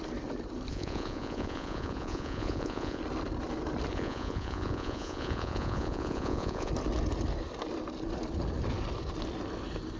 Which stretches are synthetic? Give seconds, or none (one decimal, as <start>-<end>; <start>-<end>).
0.7-3.0; 3.9-6.7